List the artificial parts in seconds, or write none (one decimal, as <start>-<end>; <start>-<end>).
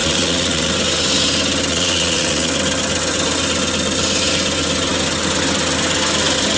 0.0-0.7; 1.7-2.5